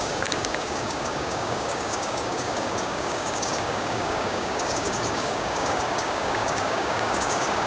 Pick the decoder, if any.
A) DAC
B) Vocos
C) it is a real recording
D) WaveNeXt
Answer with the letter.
A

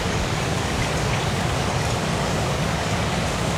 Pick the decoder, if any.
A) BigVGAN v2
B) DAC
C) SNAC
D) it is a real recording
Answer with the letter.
B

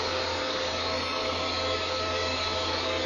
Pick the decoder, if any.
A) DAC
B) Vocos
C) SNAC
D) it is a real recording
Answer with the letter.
A